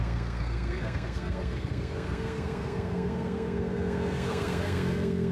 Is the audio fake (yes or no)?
yes